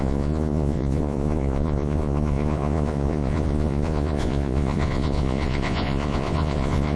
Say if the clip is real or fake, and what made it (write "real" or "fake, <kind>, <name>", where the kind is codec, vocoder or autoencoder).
fake, vocoder, Vocos